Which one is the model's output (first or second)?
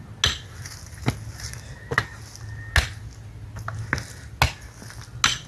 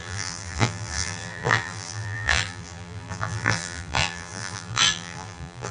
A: second